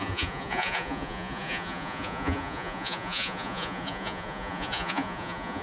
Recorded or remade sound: remade